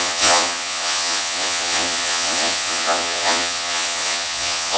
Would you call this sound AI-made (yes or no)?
yes